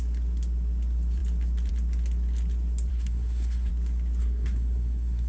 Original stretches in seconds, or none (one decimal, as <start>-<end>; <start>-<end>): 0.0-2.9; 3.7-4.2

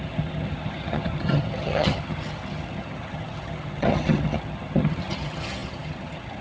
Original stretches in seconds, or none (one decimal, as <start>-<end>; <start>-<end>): none

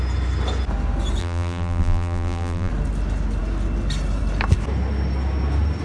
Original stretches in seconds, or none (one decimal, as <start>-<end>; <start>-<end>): 0.0-1.2; 2.7-5.8

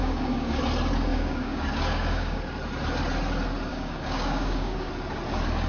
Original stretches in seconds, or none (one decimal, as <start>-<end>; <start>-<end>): 0.6-1.1; 2.4-3.7; 4.9-5.7